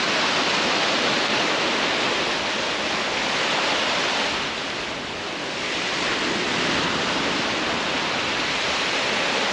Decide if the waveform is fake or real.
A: real